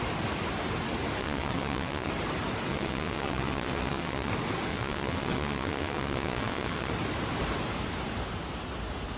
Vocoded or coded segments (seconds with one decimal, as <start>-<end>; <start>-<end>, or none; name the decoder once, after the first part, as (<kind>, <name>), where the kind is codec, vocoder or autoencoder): 1.2-2.1 (vocoder, WaveNeXt); 2.7-4.3; 4.7-6.9

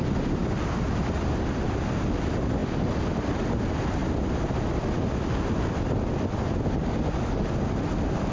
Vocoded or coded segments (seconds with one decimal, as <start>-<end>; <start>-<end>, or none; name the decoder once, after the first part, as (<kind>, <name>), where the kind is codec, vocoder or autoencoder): none

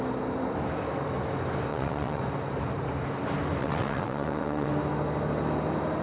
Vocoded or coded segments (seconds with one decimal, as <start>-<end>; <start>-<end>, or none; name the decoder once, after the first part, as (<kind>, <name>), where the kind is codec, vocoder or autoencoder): 1.7-2.2 (vocoder, WaveNeXt); 3.6-4.7

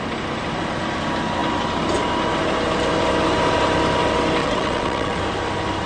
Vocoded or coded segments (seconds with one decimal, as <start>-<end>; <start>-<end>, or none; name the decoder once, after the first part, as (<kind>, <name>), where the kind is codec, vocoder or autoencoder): 4.4-5.2 (vocoder, WaveNeXt)

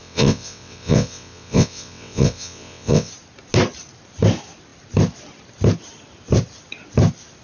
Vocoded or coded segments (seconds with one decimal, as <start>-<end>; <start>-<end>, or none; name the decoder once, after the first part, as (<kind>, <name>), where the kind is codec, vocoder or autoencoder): 0.0-3.1 (vocoder, WaveNeXt)

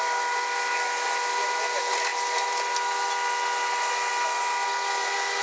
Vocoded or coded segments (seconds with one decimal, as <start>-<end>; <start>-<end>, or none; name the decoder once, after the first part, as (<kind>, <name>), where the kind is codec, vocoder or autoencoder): none

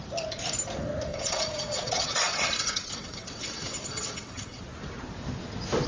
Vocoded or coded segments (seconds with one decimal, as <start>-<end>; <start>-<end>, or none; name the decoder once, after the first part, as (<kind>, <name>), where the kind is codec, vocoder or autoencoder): 1.1-4.6 (vocoder, WaveNeXt)